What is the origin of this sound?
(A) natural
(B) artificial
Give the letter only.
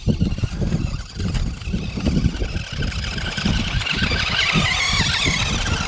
A